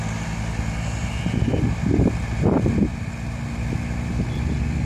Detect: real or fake real